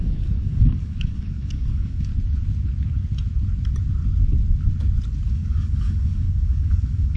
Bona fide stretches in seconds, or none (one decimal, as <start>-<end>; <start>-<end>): 2.1-5.3